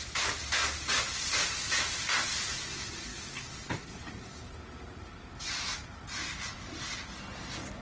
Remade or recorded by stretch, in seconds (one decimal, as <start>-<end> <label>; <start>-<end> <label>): 0.0-7.8 recorded